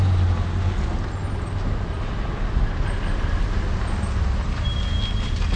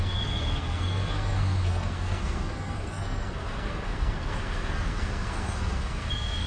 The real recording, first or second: first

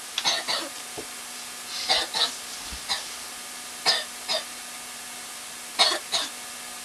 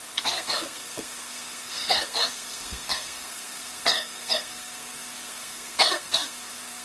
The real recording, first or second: first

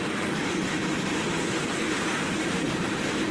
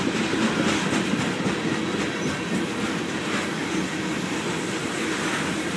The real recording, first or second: second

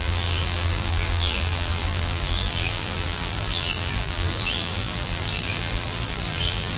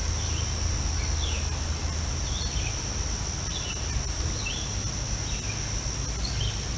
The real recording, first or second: second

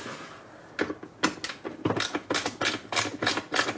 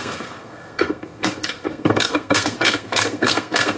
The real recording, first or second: first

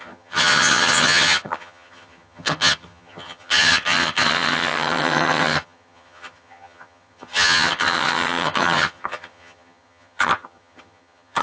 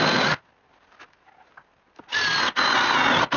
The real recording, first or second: second